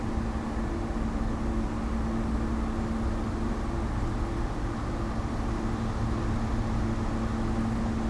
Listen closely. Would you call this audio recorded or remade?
recorded